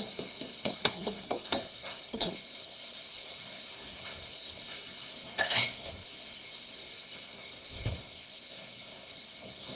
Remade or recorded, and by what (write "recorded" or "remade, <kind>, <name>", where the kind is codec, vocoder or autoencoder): remade, codec, SNAC